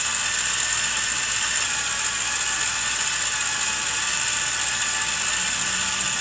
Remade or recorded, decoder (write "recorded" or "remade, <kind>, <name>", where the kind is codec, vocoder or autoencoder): recorded